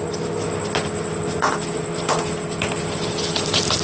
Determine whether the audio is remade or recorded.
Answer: recorded